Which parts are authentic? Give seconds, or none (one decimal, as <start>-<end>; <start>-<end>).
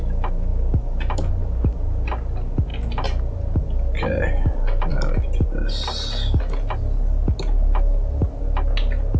0.0-9.2